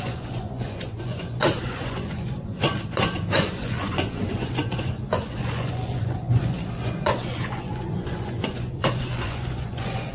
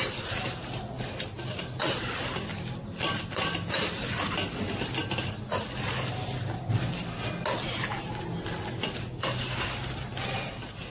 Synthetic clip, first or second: first